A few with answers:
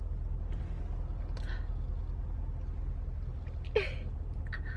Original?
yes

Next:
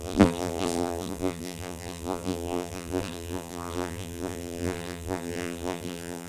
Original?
no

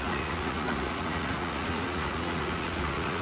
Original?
no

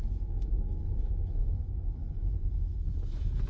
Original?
no